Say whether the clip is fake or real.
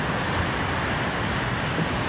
real